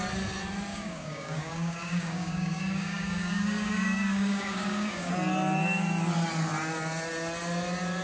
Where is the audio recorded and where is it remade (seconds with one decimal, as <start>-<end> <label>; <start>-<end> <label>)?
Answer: 0.0-0.7 recorded; 0.7-5.1 remade; 5.1-8.0 recorded